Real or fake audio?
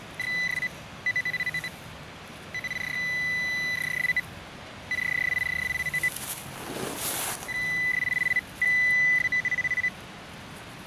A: real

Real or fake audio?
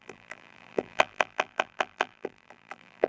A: fake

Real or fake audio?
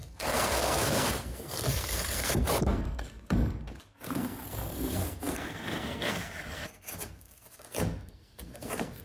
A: fake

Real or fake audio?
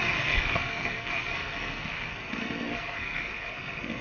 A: fake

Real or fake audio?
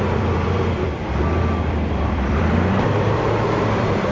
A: fake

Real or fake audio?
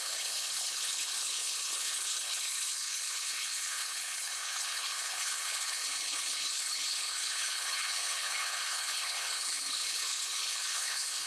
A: fake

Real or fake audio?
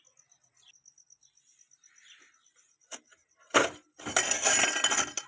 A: real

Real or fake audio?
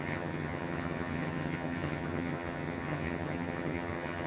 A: fake